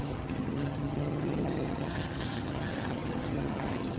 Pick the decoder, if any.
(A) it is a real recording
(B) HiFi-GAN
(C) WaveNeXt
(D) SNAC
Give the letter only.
B